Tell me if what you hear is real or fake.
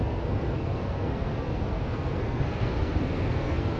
fake